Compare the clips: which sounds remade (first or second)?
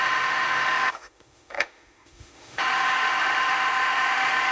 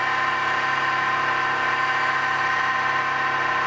first